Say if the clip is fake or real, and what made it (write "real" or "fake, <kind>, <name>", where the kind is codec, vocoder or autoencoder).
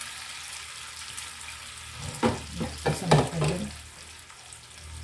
real